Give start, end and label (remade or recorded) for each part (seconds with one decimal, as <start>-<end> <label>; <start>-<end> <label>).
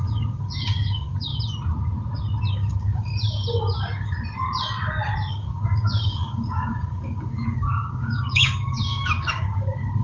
0.0-1.3 remade; 1.3-2.5 recorded; 2.5-3.1 remade; 3.1-5.3 recorded; 5.3-10.0 remade